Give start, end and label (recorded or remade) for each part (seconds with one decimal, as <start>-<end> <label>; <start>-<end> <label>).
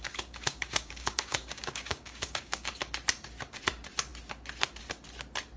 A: 0.0-2.7 remade; 2.7-5.6 recorded